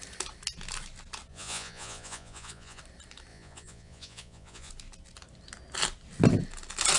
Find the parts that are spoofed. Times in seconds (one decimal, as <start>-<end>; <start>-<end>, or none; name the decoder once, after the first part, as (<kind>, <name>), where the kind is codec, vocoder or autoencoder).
1.3-2.8 (vocoder, Vocos); 3.3-4.7